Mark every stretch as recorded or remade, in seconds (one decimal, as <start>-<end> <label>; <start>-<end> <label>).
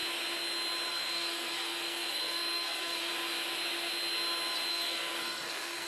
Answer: 0.0-0.9 recorded; 0.9-3.1 remade; 3.1-4.7 recorded; 4.7-5.9 remade